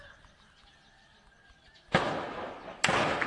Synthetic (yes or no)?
no